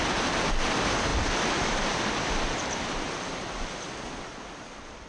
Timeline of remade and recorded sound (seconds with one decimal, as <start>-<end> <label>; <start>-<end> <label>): 0.0-5.1 recorded